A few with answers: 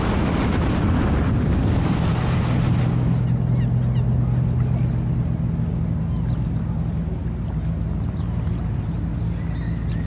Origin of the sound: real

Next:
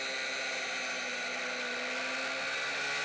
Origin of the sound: real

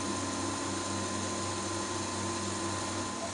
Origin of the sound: real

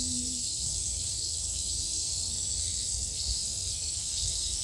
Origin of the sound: fake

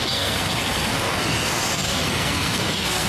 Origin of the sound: fake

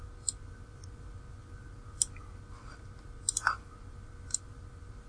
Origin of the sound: real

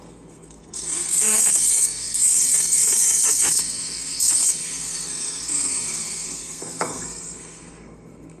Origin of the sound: fake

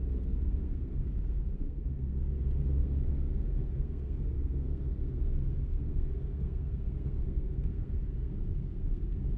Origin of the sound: fake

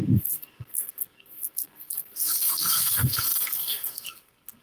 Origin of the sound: fake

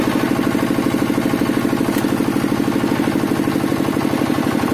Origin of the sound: real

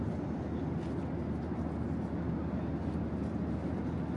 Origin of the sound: real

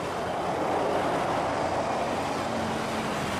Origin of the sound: real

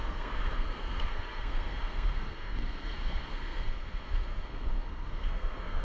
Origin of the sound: fake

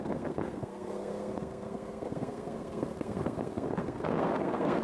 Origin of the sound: fake